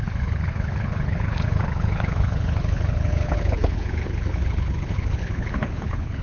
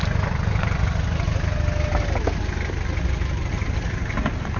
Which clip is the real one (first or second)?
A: second